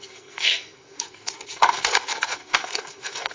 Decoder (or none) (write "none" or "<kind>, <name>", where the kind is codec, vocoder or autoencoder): codec, SNAC